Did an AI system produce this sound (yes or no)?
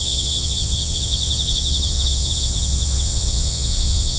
yes